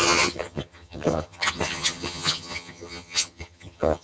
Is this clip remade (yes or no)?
yes